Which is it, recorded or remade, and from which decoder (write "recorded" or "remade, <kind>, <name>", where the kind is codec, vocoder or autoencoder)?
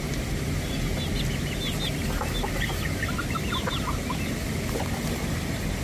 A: remade, vocoder, BigVGAN v2